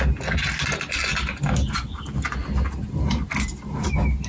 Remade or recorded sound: recorded